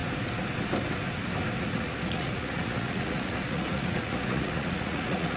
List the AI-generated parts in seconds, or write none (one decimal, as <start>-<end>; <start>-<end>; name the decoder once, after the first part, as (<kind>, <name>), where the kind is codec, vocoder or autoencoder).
1.6-5.4 (vocoder, Vocos)